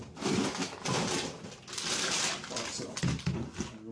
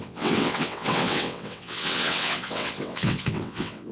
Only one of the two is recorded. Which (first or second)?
first